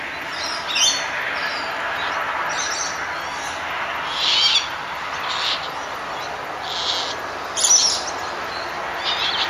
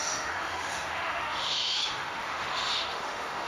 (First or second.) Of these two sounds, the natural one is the first